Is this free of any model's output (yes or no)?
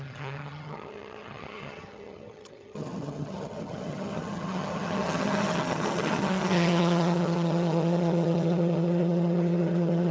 no